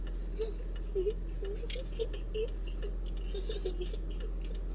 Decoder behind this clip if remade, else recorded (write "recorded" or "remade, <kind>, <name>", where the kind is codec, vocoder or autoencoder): recorded